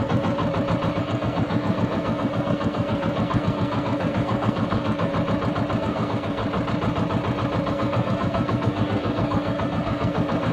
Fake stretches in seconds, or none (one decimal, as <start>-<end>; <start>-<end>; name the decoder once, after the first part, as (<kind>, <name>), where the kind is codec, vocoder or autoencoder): 0.0-0.4 (codec, SNAC); 1.0-5.1; 5.8-6.4; 7.7-10.5